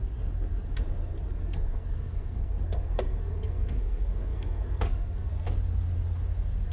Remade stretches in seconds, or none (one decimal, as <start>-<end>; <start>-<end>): 1.3-5.3